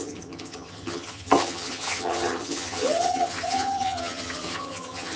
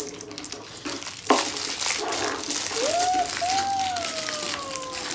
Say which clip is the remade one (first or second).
first